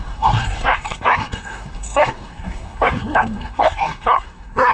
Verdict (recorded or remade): remade